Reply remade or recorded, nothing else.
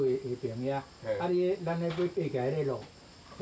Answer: recorded